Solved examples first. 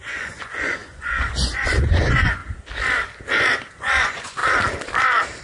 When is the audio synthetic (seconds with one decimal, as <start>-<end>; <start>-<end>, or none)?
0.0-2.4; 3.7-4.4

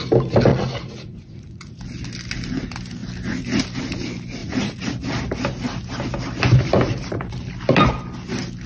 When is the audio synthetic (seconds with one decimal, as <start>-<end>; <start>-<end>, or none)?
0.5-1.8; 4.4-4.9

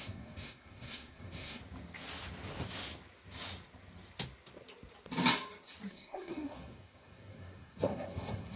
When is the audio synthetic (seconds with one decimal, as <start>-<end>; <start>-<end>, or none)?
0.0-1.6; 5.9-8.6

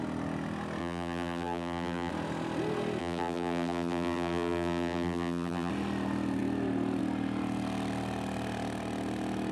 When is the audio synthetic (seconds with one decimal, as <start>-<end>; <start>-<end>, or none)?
0.8-2.1; 3.0-5.7

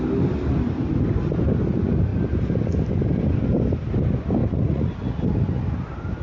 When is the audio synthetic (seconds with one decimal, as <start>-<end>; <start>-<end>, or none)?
4.4-5.2

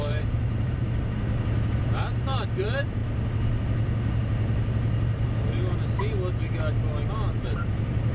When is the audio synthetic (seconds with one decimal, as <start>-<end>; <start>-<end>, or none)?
0.0-0.8; 1.7-3.0; 7.1-8.1

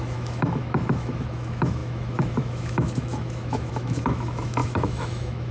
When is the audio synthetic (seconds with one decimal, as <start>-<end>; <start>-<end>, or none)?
0.0-5.5

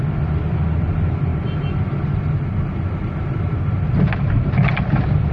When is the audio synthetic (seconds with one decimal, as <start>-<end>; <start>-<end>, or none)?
none